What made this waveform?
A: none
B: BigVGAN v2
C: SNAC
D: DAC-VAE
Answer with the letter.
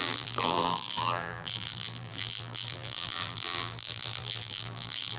B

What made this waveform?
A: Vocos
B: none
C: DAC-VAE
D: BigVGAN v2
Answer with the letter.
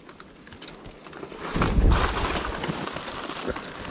B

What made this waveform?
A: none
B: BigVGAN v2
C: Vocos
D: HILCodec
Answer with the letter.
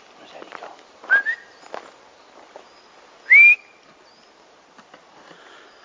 A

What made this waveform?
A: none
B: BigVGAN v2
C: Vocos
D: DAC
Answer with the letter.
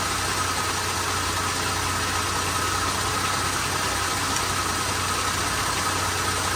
A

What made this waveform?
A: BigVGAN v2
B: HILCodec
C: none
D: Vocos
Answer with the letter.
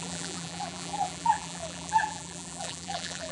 A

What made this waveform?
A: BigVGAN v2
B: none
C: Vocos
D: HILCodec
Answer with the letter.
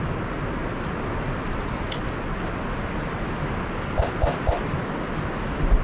B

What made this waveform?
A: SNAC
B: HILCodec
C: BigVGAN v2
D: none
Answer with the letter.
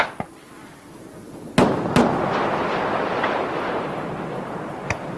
D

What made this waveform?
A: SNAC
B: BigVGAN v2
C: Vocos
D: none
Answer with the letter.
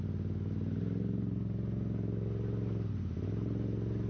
D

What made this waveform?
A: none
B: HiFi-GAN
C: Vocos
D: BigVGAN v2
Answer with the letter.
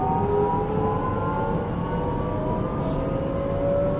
A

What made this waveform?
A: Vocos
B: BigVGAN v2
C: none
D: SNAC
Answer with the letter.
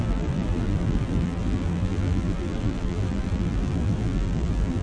B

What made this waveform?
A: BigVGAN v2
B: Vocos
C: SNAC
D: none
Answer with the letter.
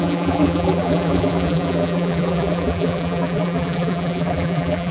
A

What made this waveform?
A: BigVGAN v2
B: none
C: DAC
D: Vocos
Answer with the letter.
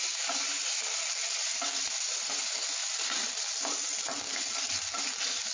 B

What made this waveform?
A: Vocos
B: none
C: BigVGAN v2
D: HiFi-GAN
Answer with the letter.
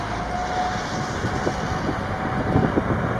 B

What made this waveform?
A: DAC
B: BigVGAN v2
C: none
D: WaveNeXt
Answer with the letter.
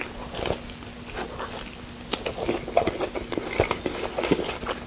C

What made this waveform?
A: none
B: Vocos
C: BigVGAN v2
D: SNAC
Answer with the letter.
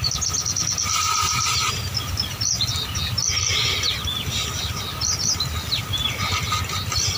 A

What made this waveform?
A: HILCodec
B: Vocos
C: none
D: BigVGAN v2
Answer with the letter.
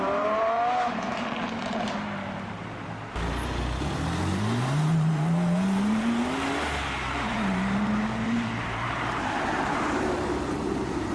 D